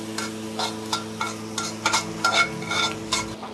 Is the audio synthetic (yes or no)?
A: no